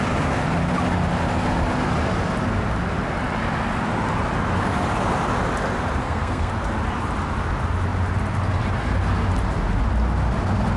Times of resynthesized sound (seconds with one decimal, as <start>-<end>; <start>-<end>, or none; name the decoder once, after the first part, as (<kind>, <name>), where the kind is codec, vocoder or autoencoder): 6.0-6.5 (codec, SNAC)